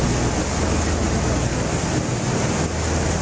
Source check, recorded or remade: recorded